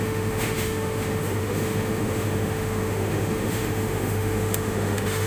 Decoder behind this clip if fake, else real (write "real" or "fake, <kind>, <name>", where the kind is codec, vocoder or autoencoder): fake, autoencoder, DAC-VAE